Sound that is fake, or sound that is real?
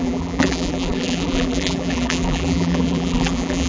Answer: fake